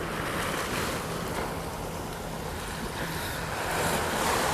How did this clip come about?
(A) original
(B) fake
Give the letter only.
A